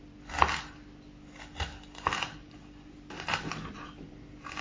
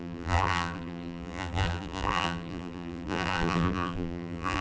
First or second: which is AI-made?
second